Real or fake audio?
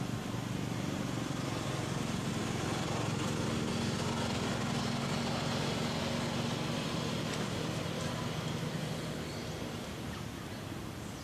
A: real